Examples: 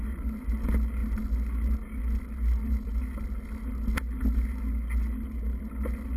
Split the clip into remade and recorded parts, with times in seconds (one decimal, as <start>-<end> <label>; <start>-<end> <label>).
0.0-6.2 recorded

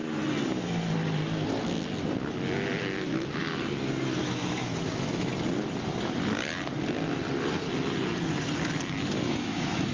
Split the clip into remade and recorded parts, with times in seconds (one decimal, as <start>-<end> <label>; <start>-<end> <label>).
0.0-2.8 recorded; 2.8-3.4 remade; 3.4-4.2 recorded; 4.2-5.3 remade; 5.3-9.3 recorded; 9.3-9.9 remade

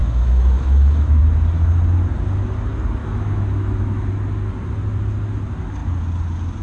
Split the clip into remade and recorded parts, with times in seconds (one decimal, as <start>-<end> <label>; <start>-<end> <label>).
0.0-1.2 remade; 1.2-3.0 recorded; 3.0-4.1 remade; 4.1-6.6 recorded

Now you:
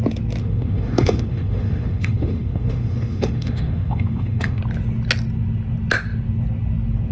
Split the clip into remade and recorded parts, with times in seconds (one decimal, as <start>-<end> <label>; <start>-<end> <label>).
0.0-0.4 recorded; 0.4-4.6 remade; 4.6-7.1 recorded